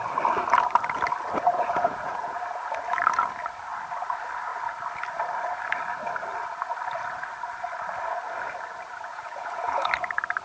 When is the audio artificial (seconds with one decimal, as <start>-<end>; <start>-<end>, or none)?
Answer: 1.5-2.4; 9.1-9.9